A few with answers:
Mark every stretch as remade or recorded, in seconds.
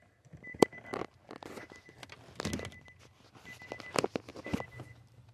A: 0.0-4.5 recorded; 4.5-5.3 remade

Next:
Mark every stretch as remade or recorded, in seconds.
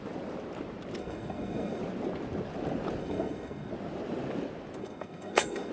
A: 0.0-1.0 recorded; 1.0-1.8 remade; 1.8-3.0 recorded; 3.0-3.7 remade; 3.7-4.8 recorded; 4.8-5.7 remade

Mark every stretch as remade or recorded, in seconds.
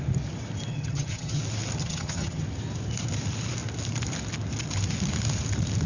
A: 0.0-0.7 recorded; 0.7-1.4 remade; 1.4-1.8 recorded; 1.8-2.4 remade; 2.4-5.9 recorded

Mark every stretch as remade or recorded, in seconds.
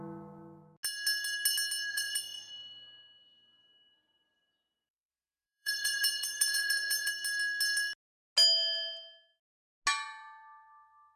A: 0.0-1.9 recorded; 1.9-2.5 remade; 2.5-5.1 recorded; 5.1-7.1 remade; 7.1-11.2 recorded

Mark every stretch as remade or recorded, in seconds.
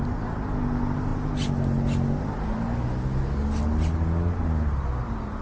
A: 0.0-5.4 recorded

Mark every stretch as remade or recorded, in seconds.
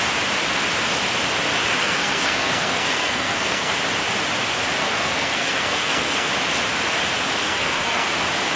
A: 0.0-1.8 recorded; 1.8-3.7 remade; 3.7-4.8 recorded; 4.8-6.3 remade; 6.3-7.4 recorded; 7.4-8.1 remade; 8.1-8.6 recorded